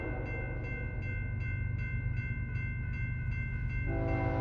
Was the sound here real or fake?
real